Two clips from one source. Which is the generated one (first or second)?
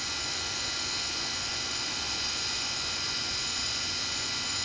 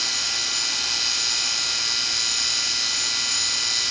first